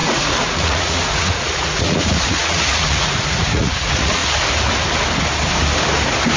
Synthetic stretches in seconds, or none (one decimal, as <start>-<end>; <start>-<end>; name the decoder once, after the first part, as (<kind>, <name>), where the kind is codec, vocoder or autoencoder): 0.0-4.2 (vocoder, Vocos)

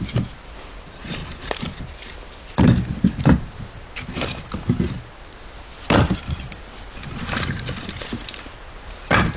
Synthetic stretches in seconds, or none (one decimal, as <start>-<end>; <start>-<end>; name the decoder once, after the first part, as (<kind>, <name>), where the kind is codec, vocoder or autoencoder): none

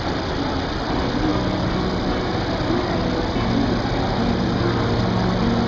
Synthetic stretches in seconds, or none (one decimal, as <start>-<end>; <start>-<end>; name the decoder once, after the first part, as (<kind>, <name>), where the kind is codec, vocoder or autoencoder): none

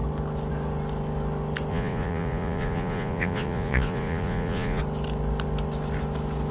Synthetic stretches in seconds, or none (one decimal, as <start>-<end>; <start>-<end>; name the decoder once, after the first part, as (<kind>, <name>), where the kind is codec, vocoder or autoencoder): 1.7-4.8 (vocoder, Vocos)

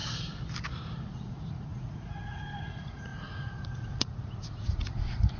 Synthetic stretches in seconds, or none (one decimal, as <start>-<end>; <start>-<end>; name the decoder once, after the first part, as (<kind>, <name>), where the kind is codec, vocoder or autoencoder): 1.1-5.4 (vocoder, Vocos)